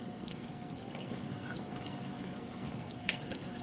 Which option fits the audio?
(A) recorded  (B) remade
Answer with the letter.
B